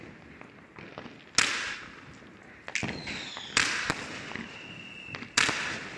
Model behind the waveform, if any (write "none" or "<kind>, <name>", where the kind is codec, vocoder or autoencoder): none